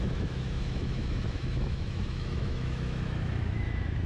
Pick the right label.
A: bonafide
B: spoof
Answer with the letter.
B